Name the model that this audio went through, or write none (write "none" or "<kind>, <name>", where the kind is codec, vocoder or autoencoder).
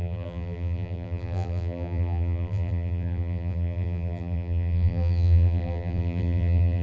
vocoder, BigVGAN v2